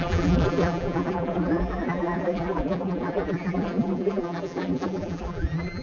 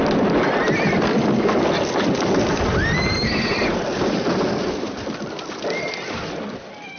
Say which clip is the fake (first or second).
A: first